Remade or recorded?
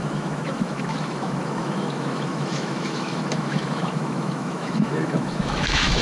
remade